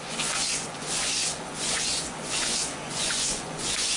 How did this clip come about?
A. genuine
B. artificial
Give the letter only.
B